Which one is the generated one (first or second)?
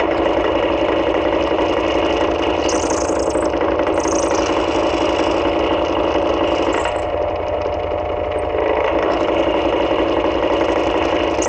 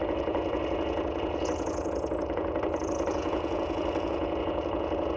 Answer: second